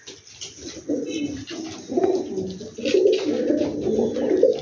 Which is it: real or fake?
real